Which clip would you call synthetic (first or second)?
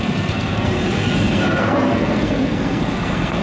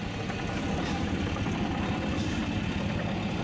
first